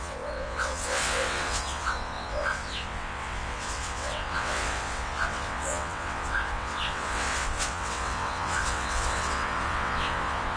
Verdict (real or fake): fake